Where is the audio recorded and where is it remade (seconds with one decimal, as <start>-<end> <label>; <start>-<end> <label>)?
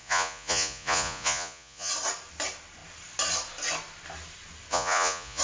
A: 0.0-1.9 remade; 1.9-4.7 recorded; 4.7-5.4 remade